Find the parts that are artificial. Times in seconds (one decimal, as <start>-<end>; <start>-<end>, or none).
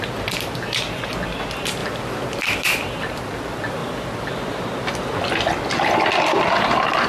0.0-1.8; 2.4-3.8; 5.8-7.1